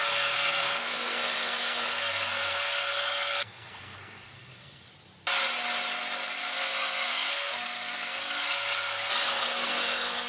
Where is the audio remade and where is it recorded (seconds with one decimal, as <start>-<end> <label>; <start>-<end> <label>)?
0.0-4.9 remade; 4.9-6.4 recorded; 6.4-10.3 remade